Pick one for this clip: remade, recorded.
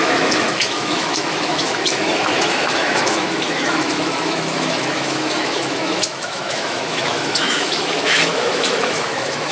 remade